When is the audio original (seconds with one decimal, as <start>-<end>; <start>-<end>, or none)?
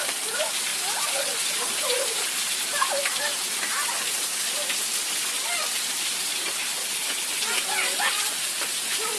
0.0-6.8; 7.3-9.2